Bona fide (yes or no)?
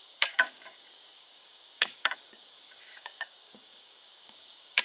no